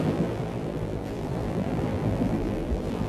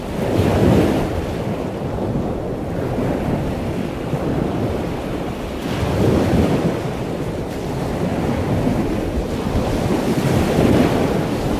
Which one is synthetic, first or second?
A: first